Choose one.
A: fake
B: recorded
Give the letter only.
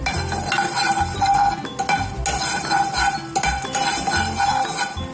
B